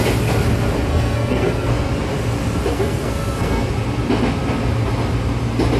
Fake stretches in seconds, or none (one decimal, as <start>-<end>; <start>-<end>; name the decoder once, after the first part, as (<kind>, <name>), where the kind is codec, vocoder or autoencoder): 0.9-1.9 (codec, SNAC); 2.7-3.7